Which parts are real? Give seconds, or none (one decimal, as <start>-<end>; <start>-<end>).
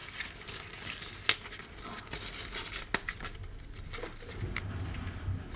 0.0-5.6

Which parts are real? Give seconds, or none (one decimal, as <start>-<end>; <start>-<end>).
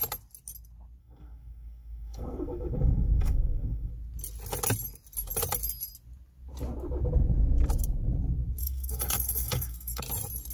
0.0-1.0; 3.9-8.6; 10.0-10.5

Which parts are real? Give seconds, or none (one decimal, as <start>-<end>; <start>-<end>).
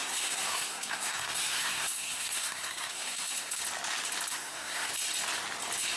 3.6-4.3; 4.9-6.0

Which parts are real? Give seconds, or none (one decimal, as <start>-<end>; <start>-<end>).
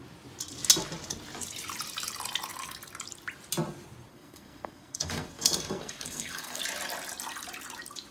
0.0-4.1; 6.6-8.1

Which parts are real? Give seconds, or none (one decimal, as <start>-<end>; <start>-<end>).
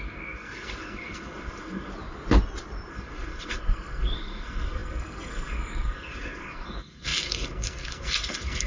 1.9-2.9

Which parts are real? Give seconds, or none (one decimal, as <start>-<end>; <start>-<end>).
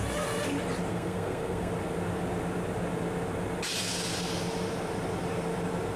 0.0-0.9; 1.7-6.0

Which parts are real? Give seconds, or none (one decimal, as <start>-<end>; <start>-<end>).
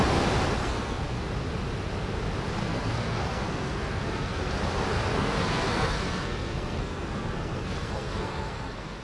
0.0-0.6; 1.2-2.6; 4.5-4.9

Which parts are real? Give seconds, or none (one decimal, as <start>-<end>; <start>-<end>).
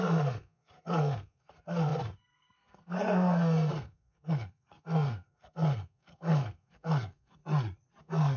7.4-8.0